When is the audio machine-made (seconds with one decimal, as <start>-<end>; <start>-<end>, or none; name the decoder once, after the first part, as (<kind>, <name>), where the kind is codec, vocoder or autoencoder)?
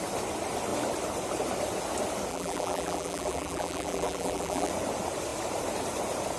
2.3-4.7 (vocoder, BigVGAN v2)